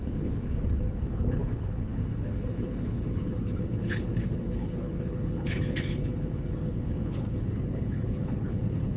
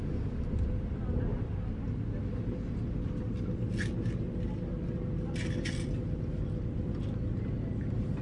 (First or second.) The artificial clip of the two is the first